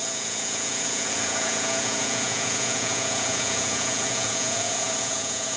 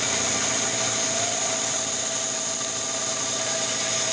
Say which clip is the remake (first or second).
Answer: first